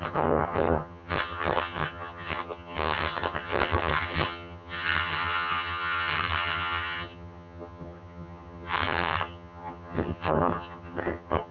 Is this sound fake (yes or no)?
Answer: yes